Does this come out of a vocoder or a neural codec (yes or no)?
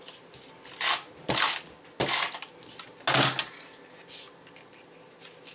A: no